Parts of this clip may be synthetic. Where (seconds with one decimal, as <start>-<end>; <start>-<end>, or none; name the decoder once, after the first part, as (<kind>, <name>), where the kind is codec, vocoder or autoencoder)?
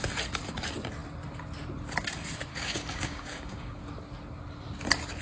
2.5-3.8 (codec, DAC)